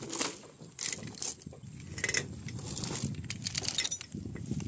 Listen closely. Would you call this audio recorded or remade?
recorded